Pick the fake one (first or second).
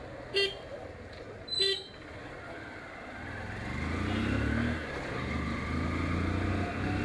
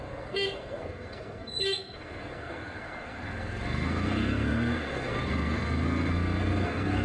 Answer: second